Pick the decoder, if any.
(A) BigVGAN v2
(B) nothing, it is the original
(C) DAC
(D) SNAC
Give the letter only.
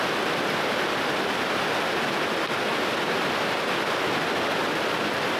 B